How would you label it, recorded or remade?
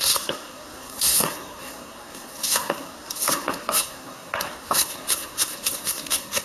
remade